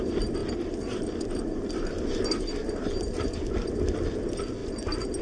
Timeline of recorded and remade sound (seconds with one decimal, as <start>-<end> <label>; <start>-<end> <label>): 0.0-5.2 recorded